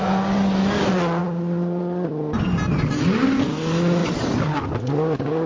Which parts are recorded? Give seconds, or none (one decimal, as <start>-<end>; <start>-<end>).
0.0-4.0; 4.6-5.5